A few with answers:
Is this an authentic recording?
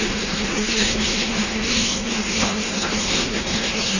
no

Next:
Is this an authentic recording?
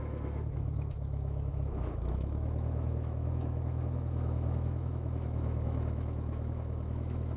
no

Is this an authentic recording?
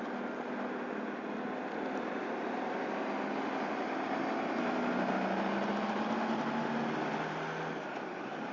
yes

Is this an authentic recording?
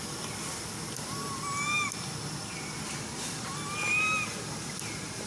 yes